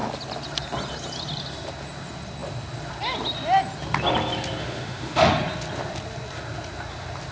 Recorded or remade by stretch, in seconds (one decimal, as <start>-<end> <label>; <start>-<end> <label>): 0.0-4.6 recorded; 4.6-5.3 remade; 5.3-7.3 recorded